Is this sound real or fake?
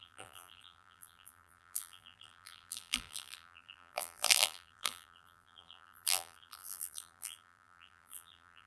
fake